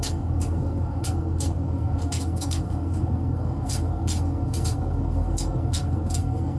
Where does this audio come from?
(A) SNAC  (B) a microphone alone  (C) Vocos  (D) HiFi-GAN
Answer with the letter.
A